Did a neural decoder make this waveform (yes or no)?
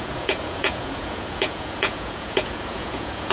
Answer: yes